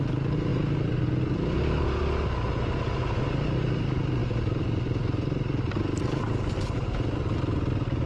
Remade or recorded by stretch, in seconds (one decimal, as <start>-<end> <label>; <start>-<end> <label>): 0.0-8.1 recorded